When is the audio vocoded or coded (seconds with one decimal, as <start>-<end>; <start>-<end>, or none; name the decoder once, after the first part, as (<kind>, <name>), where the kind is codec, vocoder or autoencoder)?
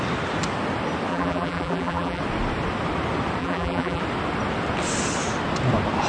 1.1-2.2 (vocoder, BigVGAN v2); 3.4-4.0